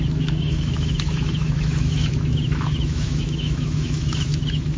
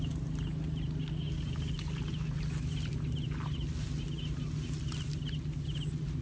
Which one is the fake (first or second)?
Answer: first